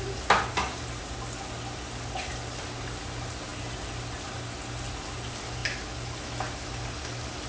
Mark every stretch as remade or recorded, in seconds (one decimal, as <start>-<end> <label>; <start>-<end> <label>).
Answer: 0.0-7.5 recorded